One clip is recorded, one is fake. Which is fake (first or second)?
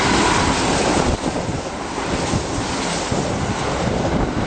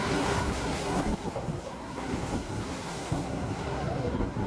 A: second